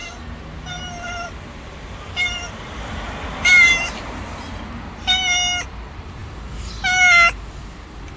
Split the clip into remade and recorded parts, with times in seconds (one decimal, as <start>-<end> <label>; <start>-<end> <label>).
0.0-8.2 recorded